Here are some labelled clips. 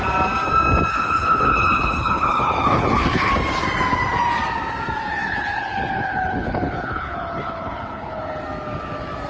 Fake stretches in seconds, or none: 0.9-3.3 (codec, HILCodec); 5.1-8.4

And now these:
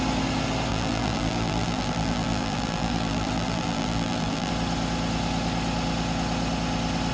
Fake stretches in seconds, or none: 0.7-4.5 (vocoder, BigVGAN v2)

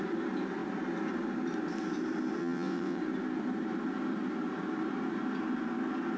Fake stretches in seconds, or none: 2.4-3.0 (vocoder, WaveNeXt)

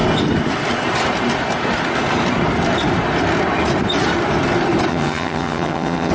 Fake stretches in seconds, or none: 4.9-6.1 (vocoder, HiFi-GAN)

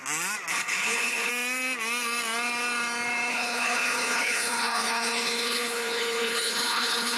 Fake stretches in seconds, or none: 0.5-1.3 (codec, HILCodec); 3.3-7.2

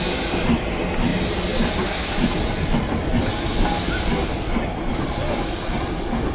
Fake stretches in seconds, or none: none

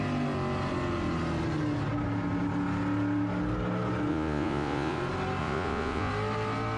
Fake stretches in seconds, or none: 4.1-5.0 (vocoder, Vocos); 5.4-6.1

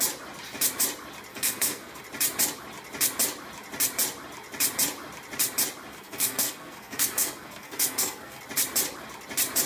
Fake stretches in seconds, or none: 1.3-2.0 (codec, SNAC); 5.9-8.4